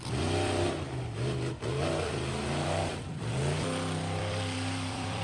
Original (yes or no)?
no